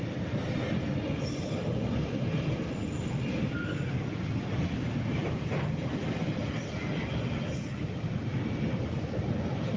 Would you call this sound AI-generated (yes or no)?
no